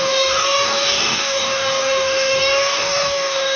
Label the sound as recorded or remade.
remade